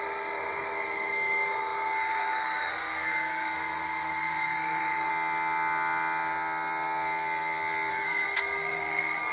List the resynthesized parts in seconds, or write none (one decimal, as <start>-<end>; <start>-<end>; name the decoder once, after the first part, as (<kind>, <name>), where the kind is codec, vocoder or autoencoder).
0.0-5.1 (codec, SNAC); 7.9-9.3